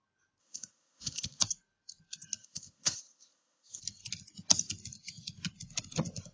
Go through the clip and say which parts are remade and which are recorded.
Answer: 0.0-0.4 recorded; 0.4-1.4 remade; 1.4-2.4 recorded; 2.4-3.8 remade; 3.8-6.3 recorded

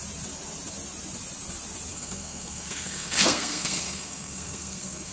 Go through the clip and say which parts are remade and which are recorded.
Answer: 0.0-1.9 recorded; 1.9-5.1 remade

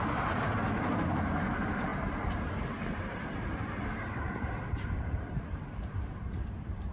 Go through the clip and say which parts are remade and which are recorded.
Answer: 0.0-6.9 remade

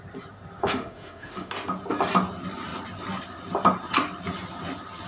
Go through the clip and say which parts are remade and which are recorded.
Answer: 0.0-0.6 recorded; 0.6-1.5 remade; 1.5-5.1 recorded

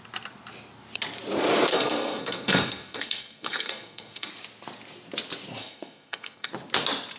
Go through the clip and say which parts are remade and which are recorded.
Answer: 0.0-1.7 recorded; 1.7-4.3 remade; 4.3-5.6 recorded; 5.6-6.5 remade; 6.5-7.2 recorded

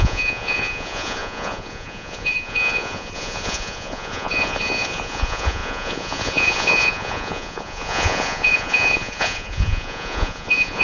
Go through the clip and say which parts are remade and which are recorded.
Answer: 0.0-10.8 remade